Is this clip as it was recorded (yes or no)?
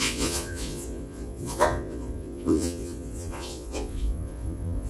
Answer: no